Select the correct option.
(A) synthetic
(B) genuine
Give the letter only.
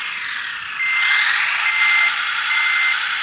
B